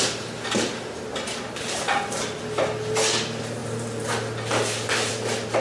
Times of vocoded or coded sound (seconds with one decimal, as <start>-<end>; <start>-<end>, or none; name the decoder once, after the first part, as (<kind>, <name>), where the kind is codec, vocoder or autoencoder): none